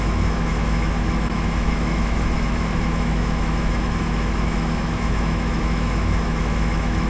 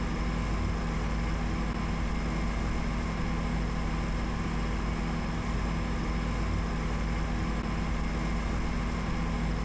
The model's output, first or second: first